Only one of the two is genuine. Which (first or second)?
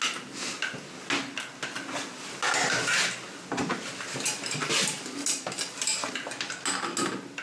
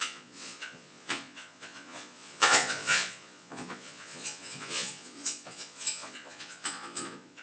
first